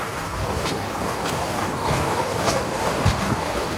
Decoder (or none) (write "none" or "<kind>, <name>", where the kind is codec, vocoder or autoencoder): codec, DAC